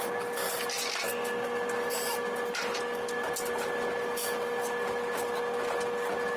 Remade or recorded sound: recorded